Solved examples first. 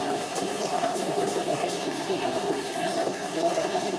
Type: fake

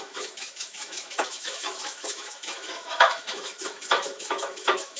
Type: fake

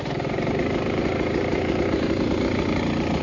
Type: fake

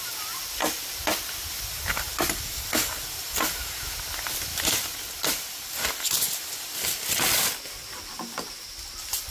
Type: real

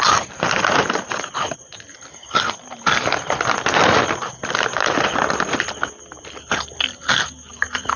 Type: real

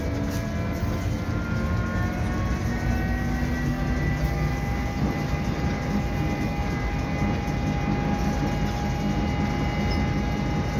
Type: real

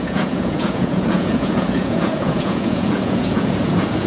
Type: fake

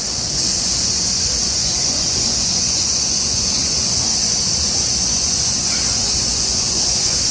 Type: fake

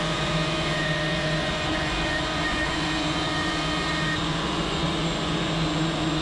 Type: fake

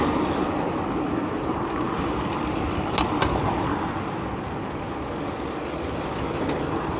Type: real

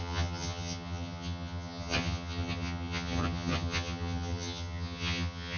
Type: fake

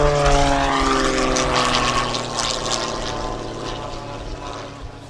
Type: real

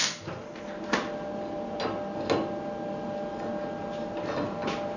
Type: real